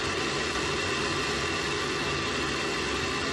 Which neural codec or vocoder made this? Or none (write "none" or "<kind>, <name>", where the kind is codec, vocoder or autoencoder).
none